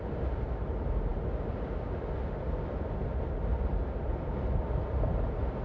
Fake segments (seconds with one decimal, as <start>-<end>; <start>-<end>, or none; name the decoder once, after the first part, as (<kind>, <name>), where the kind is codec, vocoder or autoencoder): none